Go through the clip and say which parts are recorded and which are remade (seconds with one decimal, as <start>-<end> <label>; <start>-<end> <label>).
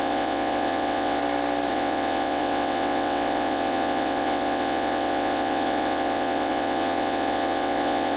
0.0-1.2 remade; 1.2-1.7 recorded; 1.7-8.2 remade